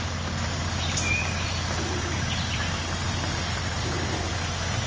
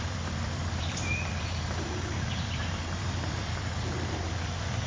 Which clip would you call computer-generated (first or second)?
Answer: second